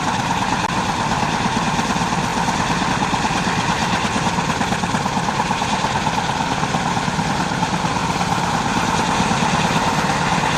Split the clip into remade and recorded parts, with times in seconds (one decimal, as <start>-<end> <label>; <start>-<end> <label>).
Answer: 0.0-10.6 recorded

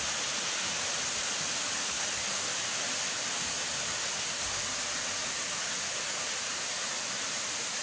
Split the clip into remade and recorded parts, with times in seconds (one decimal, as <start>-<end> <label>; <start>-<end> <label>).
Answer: 0.0-5.2 recorded; 5.2-7.0 remade; 7.0-7.8 recorded

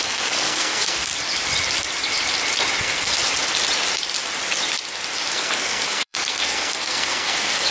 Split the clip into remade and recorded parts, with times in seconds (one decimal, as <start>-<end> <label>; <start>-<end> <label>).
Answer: 0.0-1.1 remade; 1.1-2.8 recorded; 2.8-3.2 remade; 3.2-5.3 recorded; 5.3-7.7 remade